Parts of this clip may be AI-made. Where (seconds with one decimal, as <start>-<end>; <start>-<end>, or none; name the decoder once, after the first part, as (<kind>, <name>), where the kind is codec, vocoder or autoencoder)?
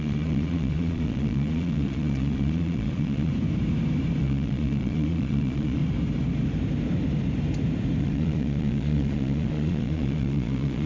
0.0-3.3 (vocoder, Vocos); 4.2-5.8; 8.0-10.9